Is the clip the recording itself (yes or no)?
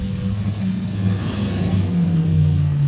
no